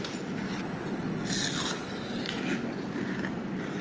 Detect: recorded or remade recorded